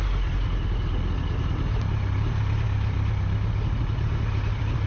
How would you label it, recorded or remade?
recorded